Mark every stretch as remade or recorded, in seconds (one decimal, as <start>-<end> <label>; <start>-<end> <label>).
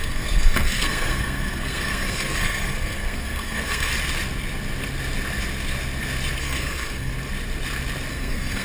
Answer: 0.0-3.9 remade; 3.9-6.4 recorded; 6.4-7.1 remade; 7.1-8.1 recorded; 8.1-8.6 remade